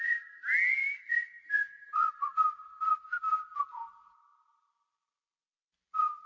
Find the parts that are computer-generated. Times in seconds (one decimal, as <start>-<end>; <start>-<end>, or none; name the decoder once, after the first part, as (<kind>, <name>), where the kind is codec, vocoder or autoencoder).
none